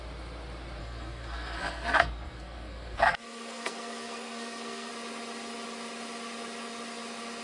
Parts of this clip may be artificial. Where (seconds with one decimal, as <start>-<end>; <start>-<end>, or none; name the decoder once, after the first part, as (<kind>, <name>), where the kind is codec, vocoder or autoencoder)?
0.8-4.9 (codec, SNAC)